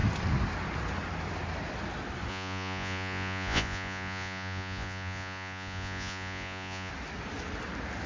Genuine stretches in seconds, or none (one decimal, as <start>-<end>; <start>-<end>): 0.0-2.3; 6.9-8.1